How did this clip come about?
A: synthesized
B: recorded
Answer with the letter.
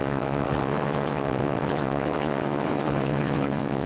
A